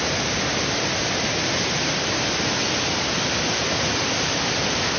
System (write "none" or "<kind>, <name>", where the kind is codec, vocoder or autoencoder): none